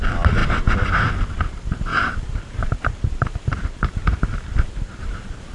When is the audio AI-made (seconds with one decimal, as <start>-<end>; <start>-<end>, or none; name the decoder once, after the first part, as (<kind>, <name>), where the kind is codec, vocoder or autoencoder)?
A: 1.9-5.5 (vocoder, BigVGAN v2)